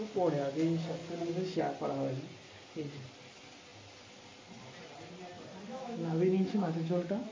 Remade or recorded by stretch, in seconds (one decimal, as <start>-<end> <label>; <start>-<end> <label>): 0.0-5.7 recorded; 5.7-7.3 remade